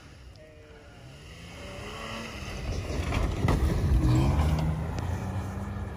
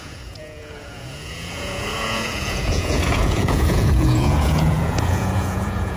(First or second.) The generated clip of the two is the second